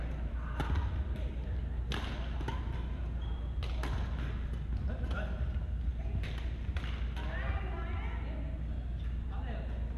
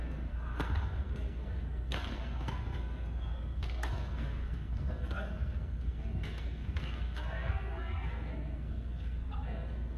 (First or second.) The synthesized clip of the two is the second